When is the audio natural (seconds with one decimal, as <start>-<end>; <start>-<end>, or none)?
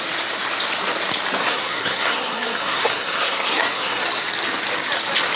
0.0-1.4; 4.0-5.4